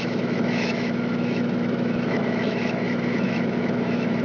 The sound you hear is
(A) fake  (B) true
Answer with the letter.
A